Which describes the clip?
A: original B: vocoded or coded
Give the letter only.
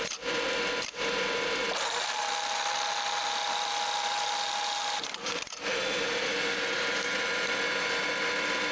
A